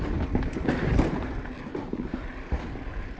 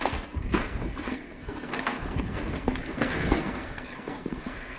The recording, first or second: first